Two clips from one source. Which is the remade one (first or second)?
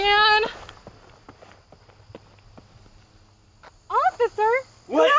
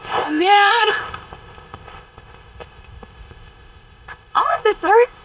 second